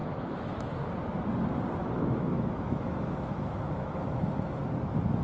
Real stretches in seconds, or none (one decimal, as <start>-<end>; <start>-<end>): 0.7-1.8; 4.2-5.2